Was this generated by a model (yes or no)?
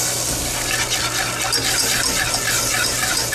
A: no